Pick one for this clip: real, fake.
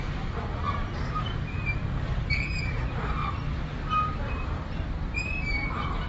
fake